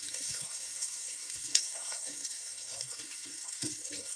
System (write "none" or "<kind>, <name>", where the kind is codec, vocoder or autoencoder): codec, SNAC